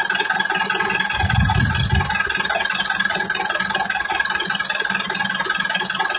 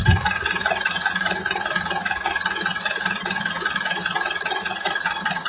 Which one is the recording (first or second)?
first